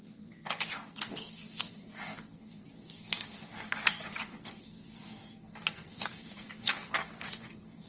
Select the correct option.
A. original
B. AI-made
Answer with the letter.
B